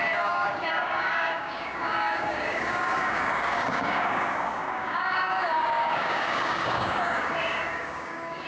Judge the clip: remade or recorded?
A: remade